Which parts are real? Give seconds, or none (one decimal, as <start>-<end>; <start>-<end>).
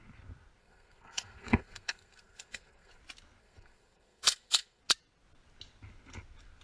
0.0-0.6; 3.0-3.4; 4.8-6.6